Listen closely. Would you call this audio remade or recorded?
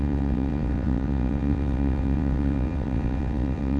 remade